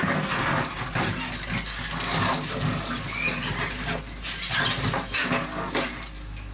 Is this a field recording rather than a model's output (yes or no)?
yes